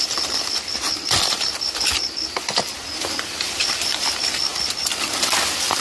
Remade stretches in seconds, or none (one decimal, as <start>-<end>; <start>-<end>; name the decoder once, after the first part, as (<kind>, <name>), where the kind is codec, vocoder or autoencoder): none

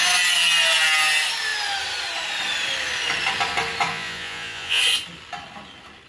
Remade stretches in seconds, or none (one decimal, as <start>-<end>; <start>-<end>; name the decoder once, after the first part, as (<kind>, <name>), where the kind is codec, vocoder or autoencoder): 3.9-4.8 (vocoder, Vocos)